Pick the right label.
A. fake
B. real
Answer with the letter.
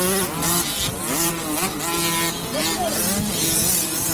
B